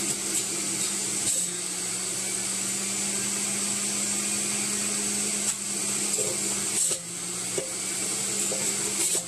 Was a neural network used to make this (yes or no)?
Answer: no